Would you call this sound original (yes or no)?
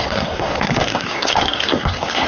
no